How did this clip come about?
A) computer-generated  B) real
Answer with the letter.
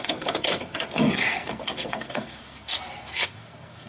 A